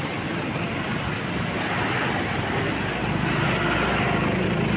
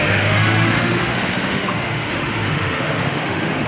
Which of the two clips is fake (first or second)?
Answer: second